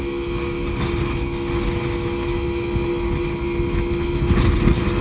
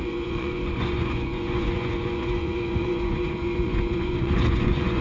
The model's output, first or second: second